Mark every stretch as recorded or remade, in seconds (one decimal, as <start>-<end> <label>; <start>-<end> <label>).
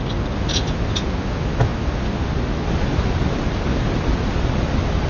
0.0-5.1 recorded